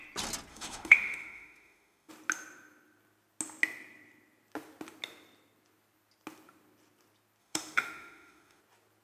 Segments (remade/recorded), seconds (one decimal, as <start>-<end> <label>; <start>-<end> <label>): 0.0-0.5 recorded; 0.5-2.1 remade; 2.1-7.4 recorded; 7.4-8.6 remade; 8.6-9.0 recorded